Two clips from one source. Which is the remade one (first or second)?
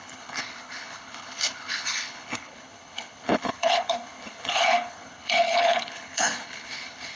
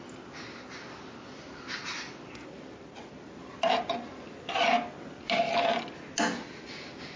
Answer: first